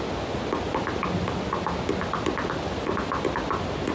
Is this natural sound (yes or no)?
yes